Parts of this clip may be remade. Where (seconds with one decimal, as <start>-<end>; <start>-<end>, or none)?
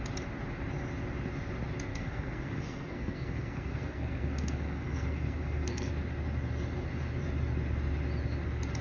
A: 1.9-5.9